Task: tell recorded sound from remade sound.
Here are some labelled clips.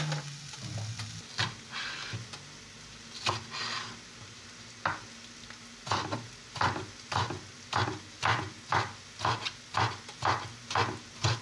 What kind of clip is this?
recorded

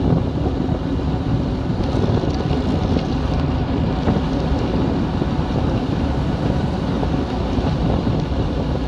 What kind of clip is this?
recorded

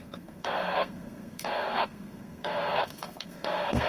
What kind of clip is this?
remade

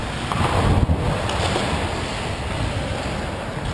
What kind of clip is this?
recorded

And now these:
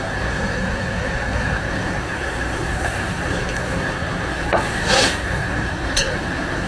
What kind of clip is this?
remade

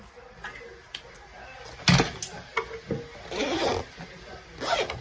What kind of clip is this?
recorded